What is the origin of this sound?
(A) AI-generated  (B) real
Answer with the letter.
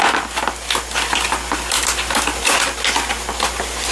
B